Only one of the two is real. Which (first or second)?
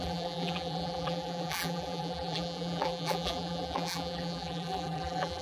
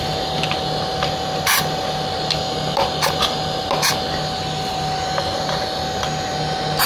second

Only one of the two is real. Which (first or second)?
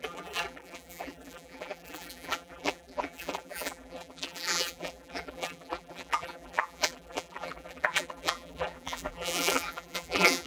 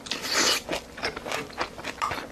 second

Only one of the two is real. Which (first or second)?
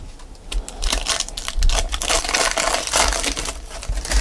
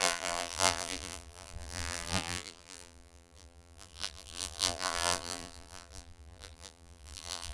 first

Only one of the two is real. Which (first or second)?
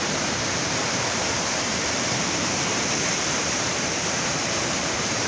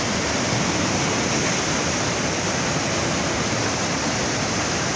second